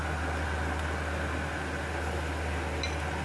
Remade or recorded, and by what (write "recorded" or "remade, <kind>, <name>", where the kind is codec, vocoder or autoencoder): recorded